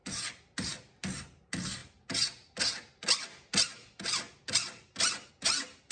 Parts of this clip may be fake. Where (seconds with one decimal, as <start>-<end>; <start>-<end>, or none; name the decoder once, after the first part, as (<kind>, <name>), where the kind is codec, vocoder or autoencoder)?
none